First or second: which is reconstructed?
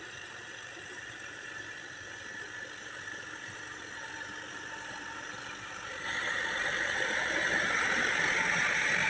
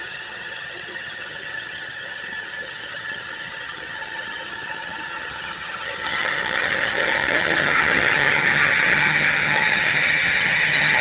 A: second